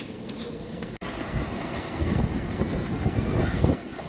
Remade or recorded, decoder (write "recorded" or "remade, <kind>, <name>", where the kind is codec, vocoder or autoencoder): remade, codec, SNAC